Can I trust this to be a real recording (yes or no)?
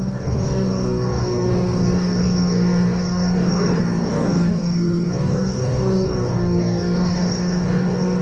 no